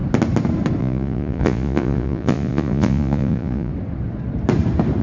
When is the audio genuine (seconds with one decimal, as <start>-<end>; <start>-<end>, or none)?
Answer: 0.0-0.8; 3.7-5.0